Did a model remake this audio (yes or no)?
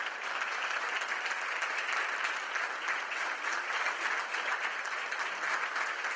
no